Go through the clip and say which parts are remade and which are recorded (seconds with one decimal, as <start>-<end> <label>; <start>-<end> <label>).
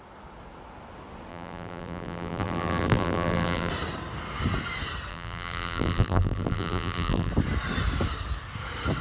0.0-1.3 recorded; 1.3-3.7 remade; 3.7-5.1 recorded; 5.1-7.3 remade; 7.3-9.0 recorded